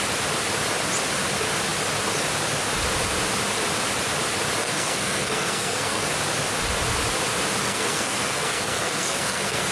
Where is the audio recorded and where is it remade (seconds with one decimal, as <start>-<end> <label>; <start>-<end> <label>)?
0.0-4.6 recorded; 4.6-6.1 remade; 6.1-7.6 recorded; 7.6-9.7 remade